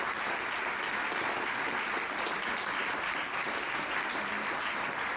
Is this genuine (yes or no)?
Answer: yes